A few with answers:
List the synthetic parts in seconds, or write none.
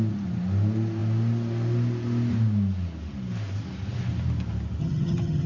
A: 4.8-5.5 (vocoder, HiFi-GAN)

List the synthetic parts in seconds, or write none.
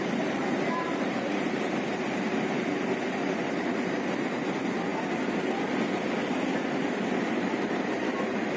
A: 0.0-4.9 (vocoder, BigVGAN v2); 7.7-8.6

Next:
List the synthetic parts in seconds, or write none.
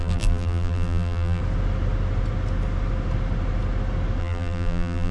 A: 0.0-1.4 (vocoder, BigVGAN v2); 4.2-5.1